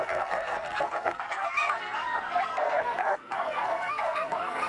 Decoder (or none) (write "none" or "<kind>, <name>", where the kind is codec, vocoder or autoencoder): codec, SNAC